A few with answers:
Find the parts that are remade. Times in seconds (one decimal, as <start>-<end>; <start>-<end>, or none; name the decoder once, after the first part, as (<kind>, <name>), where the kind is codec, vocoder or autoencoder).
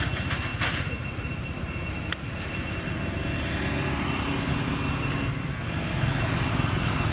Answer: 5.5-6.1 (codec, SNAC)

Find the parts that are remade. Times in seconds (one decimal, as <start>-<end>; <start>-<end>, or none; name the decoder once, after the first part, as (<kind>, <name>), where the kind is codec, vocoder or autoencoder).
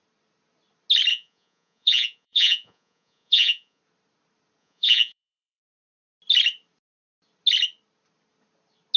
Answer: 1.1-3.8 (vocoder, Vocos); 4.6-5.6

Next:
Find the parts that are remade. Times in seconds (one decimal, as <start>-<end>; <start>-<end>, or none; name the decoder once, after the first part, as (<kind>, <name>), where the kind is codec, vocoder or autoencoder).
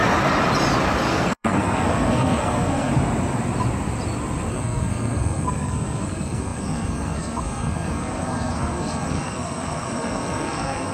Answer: 1.1-2.9 (codec, SNAC); 4.5-10.9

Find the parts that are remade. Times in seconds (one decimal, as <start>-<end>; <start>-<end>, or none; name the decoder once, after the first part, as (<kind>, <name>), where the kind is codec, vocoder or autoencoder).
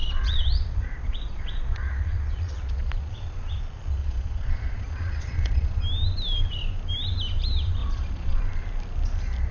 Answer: 0.0-3.6 (vocoder, Vocos); 4.0-5.8; 7.8-8.4